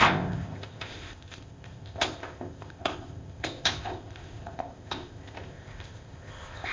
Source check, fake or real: fake